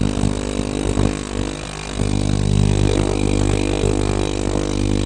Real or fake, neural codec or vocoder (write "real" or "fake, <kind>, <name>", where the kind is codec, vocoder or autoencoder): real